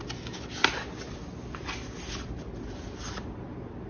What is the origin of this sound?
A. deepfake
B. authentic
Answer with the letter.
B